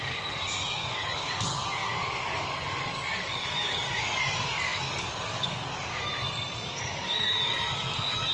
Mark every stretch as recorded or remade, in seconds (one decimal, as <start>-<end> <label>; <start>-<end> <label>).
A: 0.0-6.1 remade; 6.1-6.7 recorded; 6.7-8.3 remade